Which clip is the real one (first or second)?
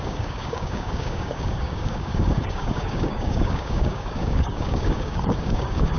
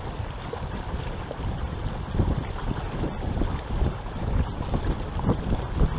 second